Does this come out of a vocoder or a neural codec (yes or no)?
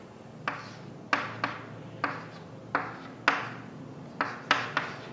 no